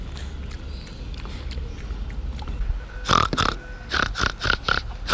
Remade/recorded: recorded